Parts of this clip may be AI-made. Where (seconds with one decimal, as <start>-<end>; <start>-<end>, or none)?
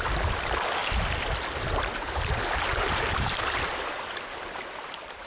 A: none